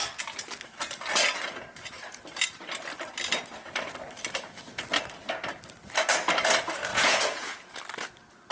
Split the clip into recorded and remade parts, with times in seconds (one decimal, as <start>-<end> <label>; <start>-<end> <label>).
0.0-6.9 recorded; 6.9-7.8 remade; 7.8-8.5 recorded